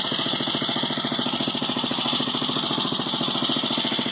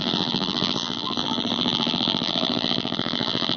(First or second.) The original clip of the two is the first